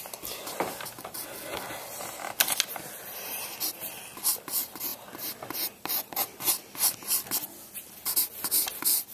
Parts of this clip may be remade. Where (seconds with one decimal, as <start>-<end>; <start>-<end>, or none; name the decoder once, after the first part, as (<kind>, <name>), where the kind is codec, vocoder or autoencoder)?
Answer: none